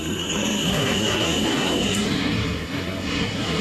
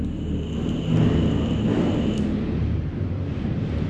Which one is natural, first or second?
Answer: second